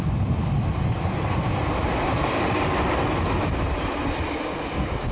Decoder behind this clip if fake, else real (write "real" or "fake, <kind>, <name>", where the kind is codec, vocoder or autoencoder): real